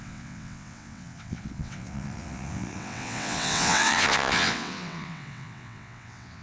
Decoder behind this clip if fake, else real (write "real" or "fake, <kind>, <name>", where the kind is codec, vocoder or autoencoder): fake, vocoder, WaveNeXt